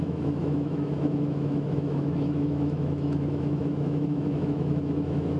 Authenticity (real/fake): fake